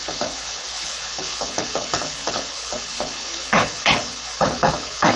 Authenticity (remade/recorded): remade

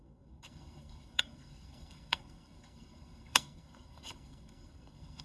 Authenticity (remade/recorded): remade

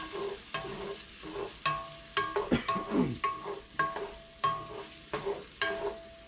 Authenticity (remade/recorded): recorded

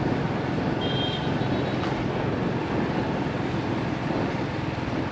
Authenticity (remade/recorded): recorded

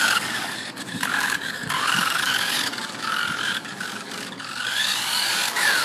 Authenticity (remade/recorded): remade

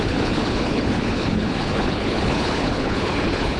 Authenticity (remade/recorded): remade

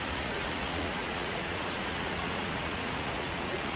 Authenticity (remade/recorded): remade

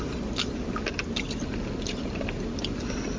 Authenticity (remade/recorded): recorded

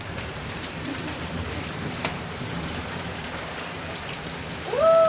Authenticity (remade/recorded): remade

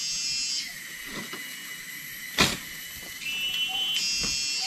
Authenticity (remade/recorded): recorded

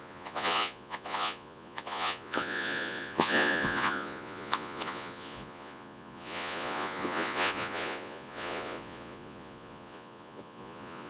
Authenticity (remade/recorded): remade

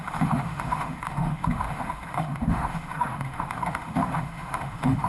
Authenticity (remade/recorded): remade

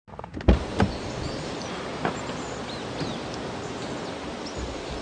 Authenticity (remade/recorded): recorded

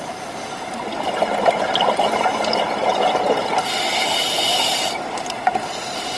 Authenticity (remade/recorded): recorded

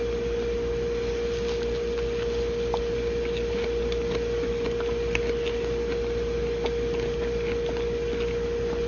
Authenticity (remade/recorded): recorded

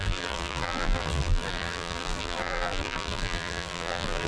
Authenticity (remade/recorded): remade